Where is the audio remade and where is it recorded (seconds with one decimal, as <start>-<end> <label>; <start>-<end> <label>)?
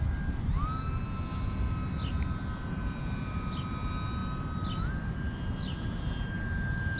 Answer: 0.0-7.0 recorded